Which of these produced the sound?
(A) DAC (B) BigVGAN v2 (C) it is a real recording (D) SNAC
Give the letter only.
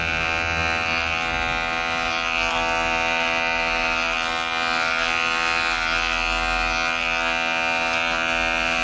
C